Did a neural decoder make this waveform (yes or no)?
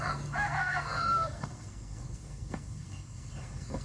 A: yes